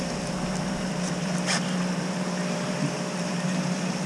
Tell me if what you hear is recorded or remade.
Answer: remade